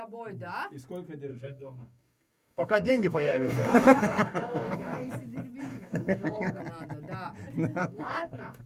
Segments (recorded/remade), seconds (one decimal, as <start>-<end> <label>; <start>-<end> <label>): 0.0-1.3 recorded; 1.3-5.1 remade; 5.1-5.7 recorded; 5.7-6.6 remade; 6.6-7.8 recorded; 7.8-8.7 remade